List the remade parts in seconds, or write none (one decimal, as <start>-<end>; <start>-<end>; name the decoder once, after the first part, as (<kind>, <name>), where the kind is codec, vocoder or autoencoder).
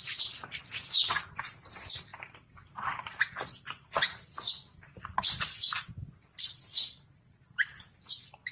none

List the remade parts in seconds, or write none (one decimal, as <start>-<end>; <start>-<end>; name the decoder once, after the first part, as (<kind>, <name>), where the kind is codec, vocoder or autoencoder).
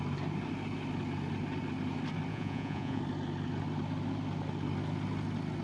2.3-3.0 (vocoder, Vocos)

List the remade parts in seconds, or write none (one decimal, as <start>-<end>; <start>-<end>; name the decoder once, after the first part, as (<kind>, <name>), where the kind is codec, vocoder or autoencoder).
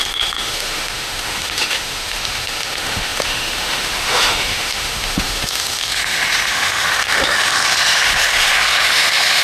0.0-9.4 (autoencoder, DAC-VAE)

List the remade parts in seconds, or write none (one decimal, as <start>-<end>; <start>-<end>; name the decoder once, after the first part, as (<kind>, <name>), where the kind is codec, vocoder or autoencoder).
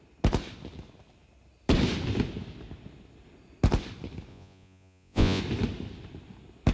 4.3-5.4 (vocoder, Vocos)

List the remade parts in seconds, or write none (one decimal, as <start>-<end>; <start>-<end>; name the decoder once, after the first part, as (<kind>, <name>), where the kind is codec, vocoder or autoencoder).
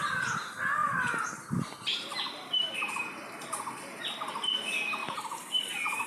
0.8-3.7 (vocoder, BigVGAN v2); 5.0-5.5